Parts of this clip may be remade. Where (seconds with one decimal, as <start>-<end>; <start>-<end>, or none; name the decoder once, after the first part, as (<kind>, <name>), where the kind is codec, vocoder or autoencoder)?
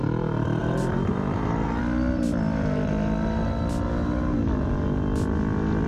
0.6-1.8 (vocoder, BigVGAN v2)